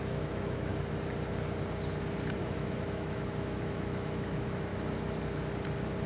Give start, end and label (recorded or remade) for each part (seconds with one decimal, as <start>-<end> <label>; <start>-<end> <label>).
0.0-0.7 remade; 0.7-2.4 recorded; 2.4-4.7 remade; 4.7-6.1 recorded